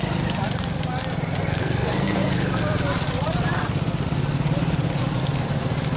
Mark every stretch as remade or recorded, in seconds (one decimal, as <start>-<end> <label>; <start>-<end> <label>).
0.0-1.5 recorded; 1.5-2.3 remade; 2.3-6.0 recorded